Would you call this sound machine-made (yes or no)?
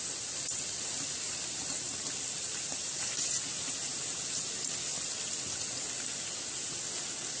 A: no